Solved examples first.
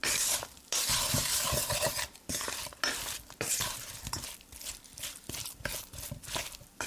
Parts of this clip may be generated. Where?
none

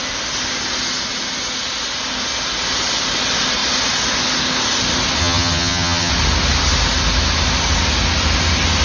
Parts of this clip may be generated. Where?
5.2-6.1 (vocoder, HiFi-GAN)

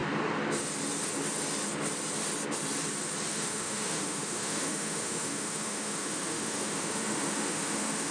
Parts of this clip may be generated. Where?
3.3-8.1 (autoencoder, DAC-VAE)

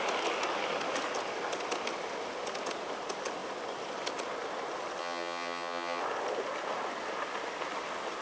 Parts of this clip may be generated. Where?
5.0-6.0 (vocoder, HiFi-GAN)